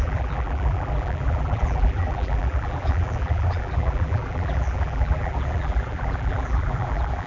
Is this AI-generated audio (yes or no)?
yes